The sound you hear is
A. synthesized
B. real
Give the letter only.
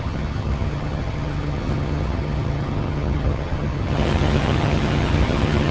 A